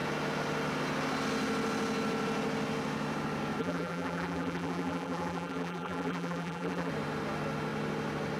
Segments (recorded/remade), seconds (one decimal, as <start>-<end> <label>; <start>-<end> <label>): 0.0-3.6 recorded; 3.6-6.9 remade; 6.9-8.4 recorded